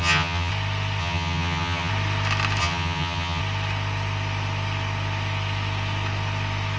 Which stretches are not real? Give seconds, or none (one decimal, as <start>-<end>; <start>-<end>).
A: 0.0-0.5; 1.0-1.9; 2.6-3.4